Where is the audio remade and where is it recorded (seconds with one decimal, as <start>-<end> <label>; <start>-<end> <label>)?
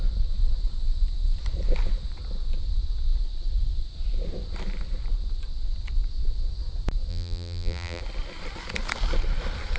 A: 0.0-7.1 recorded; 7.1-8.0 remade; 8.0-9.8 recorded